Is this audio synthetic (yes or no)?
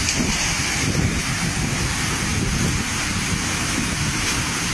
no